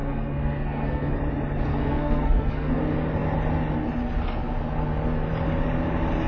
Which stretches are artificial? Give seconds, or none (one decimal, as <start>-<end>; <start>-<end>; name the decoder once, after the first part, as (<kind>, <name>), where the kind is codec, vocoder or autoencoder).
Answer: 0.0-1.2 (codec, SNAC); 1.7-2.8